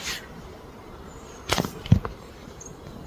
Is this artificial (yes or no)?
no